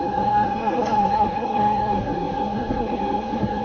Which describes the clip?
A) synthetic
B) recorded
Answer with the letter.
A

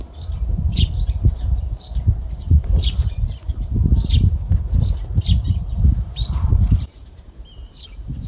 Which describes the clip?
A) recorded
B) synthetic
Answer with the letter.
B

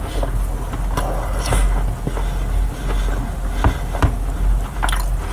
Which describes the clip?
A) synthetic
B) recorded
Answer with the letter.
B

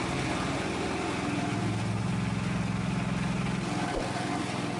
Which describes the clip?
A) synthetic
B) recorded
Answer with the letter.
B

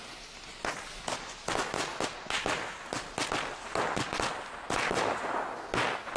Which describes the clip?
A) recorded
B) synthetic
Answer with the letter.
A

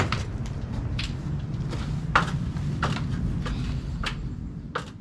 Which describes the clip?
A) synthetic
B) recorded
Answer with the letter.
B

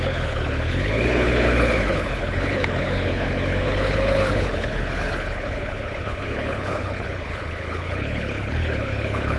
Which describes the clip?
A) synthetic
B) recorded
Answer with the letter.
A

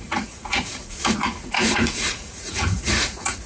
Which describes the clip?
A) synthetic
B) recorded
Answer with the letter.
A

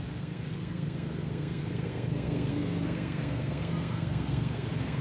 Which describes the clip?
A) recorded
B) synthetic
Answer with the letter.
B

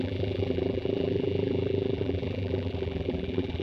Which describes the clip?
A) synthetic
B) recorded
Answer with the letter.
A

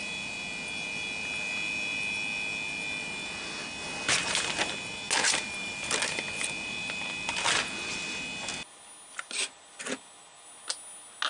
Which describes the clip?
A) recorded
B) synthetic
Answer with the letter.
A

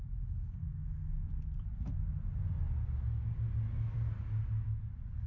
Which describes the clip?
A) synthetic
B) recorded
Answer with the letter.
B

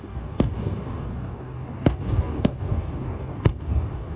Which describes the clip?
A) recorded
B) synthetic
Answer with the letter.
B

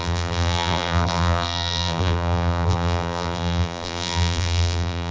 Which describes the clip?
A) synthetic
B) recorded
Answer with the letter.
A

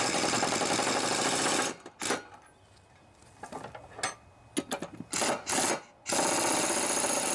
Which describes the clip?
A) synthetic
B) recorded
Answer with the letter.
B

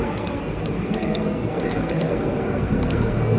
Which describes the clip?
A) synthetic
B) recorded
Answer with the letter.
A